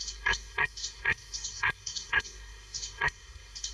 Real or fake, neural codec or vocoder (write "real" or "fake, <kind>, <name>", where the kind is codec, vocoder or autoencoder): fake, codec, SNAC